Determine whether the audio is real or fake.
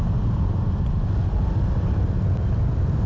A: real